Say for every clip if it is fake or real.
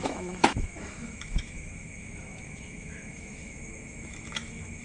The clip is fake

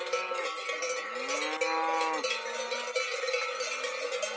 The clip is real